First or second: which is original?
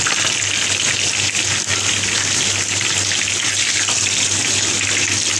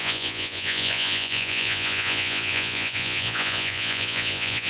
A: first